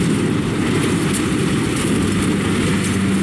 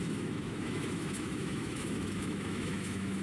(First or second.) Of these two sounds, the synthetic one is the second